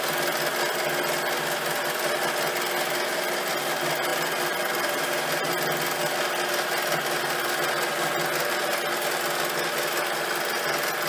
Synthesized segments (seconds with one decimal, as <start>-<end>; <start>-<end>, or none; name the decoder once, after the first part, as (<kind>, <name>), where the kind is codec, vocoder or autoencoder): none